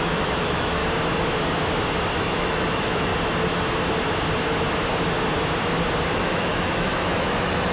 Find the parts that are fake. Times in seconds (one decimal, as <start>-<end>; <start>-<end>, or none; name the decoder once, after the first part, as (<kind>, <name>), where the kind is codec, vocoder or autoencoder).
0.0-0.8 (autoencoder, DAC-VAE); 2.2-3.1; 6.1-7.7